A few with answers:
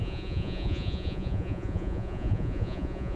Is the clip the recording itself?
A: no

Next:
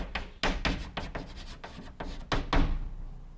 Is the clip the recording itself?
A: yes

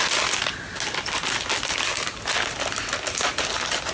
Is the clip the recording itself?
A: yes